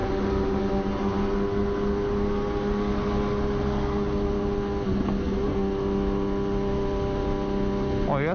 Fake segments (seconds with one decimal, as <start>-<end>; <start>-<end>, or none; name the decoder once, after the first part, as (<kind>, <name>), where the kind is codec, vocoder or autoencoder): none